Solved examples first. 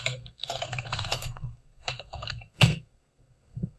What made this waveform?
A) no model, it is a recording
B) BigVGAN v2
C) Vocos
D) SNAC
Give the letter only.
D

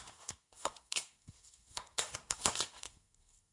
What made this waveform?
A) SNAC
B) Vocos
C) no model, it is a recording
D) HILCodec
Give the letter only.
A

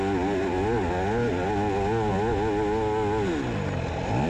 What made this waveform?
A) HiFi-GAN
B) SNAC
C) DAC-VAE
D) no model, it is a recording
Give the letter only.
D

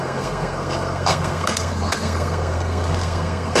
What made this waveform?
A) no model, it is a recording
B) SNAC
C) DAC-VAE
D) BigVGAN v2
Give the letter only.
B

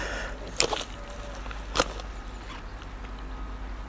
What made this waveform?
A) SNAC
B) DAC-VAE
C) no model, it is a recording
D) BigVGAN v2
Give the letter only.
C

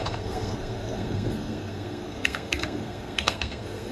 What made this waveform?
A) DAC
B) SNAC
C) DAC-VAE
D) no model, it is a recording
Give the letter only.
B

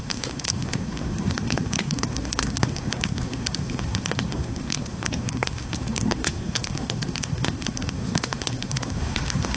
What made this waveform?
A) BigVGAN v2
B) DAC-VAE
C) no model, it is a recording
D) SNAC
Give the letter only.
D